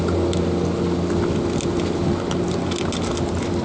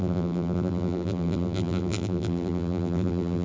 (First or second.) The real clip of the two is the first